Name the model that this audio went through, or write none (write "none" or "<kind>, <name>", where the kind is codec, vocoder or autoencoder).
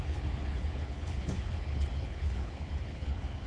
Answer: codec, HILCodec